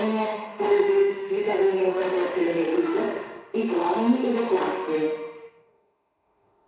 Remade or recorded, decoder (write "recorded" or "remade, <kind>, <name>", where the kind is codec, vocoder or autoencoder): remade, autoencoder, DAC-VAE